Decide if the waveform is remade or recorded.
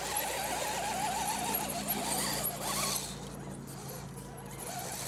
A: recorded